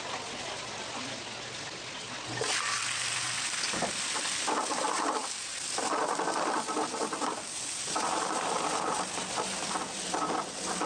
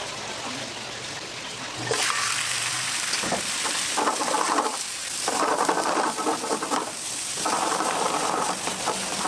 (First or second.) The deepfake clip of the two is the second